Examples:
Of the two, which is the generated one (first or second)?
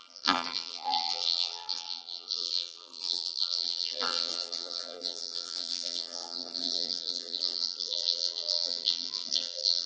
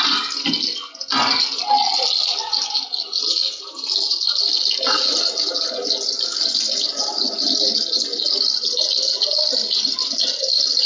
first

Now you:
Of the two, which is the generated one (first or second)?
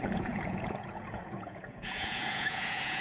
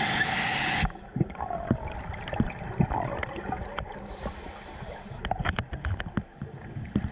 first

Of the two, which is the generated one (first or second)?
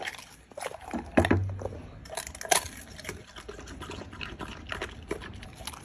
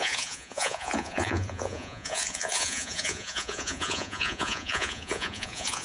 second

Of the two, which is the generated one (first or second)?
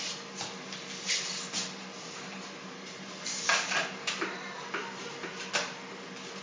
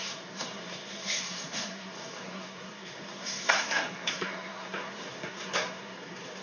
second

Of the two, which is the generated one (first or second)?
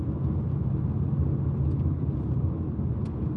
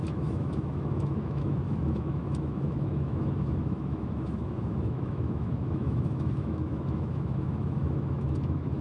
second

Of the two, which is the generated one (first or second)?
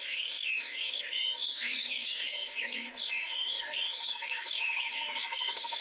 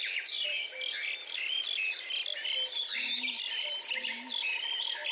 first